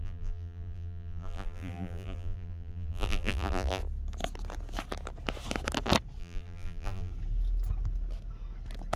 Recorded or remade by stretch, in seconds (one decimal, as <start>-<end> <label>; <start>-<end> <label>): 0.0-3.8 remade; 3.8-6.2 recorded; 6.2-7.1 remade; 7.1-9.0 recorded